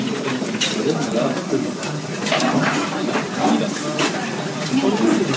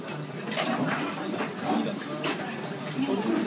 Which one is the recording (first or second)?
second